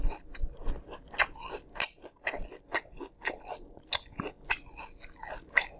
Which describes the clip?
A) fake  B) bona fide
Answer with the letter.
B